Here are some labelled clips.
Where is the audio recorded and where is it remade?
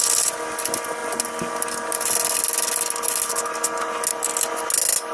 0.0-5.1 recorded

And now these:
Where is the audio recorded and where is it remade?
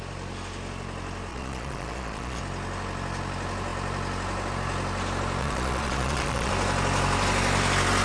0.0-1.3 recorded; 1.3-2.4 remade; 2.4-5.4 recorded; 5.4-6.5 remade; 6.5-8.0 recorded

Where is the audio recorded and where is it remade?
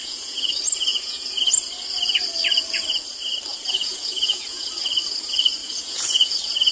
0.0-0.5 remade; 0.5-0.9 recorded; 0.9-1.4 remade; 1.4-3.5 recorded; 3.5-4.7 remade; 4.7-5.6 recorded; 5.6-6.3 remade; 6.3-6.7 recorded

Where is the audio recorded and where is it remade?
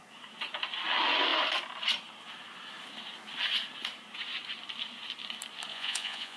0.0-5.7 recorded; 5.7-6.4 remade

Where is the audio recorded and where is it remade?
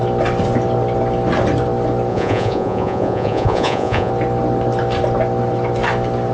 0.0-2.1 recorded; 2.1-4.1 remade; 4.1-6.3 recorded